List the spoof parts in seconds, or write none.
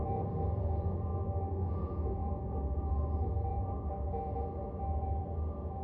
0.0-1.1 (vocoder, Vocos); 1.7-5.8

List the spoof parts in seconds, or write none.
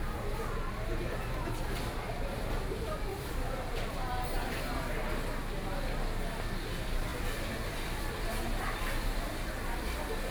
3.1-4.5 (vocoder, BigVGAN v2); 7.1-8.3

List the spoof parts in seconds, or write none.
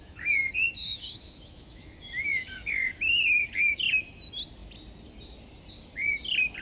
0.0-4.0 (autoencoder, DAC-VAE)